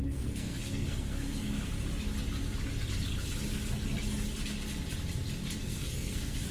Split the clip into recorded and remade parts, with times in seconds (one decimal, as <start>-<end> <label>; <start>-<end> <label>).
0.0-1.7 remade; 1.7-5.6 recorded; 5.6-6.5 remade